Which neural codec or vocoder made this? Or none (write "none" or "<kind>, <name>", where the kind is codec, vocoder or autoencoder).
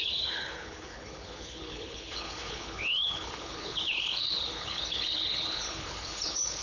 codec, HILCodec